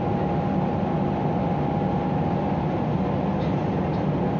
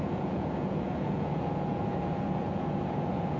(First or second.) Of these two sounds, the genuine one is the first